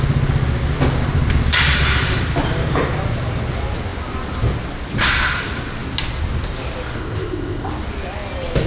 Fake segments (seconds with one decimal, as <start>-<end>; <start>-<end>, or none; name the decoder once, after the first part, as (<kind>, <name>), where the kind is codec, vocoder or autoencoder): 7.0-7.7 (codec, ZipCodec)